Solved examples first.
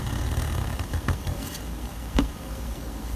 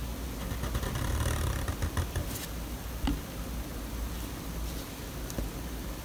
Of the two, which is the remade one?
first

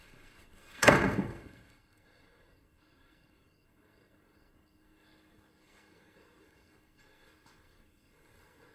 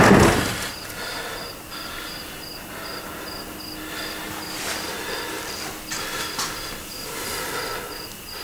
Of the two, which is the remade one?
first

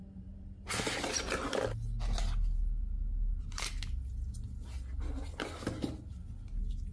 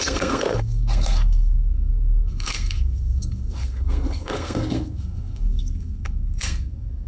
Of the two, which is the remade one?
second